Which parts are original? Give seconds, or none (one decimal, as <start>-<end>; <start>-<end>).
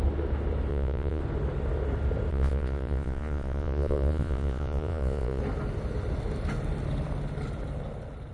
0.0-0.7; 1.2-2.3; 5.4-8.3